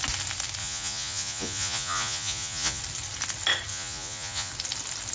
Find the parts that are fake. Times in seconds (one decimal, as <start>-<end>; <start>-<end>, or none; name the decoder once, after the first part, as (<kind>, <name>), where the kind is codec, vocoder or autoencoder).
0.6-2.8 (vocoder, Vocos); 3.7-4.5